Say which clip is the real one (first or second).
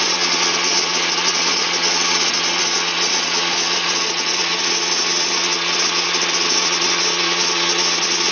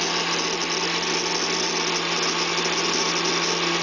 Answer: second